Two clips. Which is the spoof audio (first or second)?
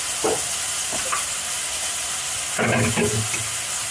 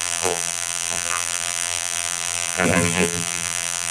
second